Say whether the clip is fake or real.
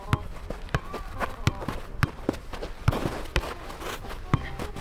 real